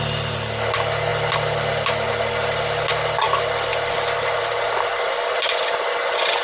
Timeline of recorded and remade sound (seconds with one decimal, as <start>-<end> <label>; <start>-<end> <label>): 0.0-6.4 recorded